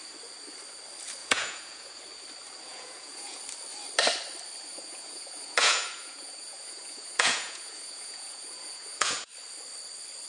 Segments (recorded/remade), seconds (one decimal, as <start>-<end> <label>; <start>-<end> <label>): 0.0-1.2 recorded; 1.2-2.0 remade; 2.0-2.7 recorded; 2.7-3.4 remade; 3.4-4.7 recorded; 4.7-9.3 remade; 9.3-10.3 recorded

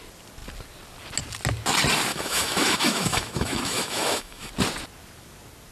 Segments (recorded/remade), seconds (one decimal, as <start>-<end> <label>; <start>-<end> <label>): 0.0-2.1 recorded; 2.1-4.5 remade; 4.5-5.7 recorded

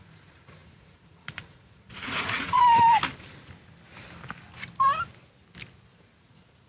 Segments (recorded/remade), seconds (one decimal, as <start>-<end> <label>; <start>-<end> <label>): 0.0-2.6 remade; 2.6-6.2 recorded; 6.2-6.7 remade

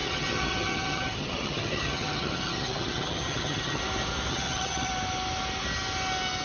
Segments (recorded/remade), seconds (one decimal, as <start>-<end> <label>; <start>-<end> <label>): 0.0-3.8 remade; 3.8-4.3 recorded; 4.3-4.9 remade; 4.9-6.4 recorded

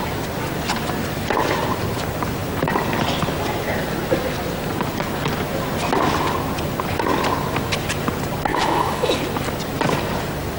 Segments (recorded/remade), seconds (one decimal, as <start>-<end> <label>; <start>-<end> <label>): 0.0-8.5 recorded; 8.5-9.2 remade; 9.2-10.6 recorded